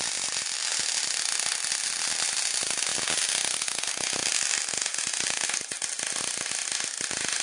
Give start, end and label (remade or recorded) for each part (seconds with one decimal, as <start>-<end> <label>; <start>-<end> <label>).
0.0-7.4 recorded